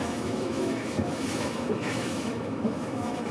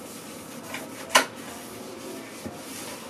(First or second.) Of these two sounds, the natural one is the second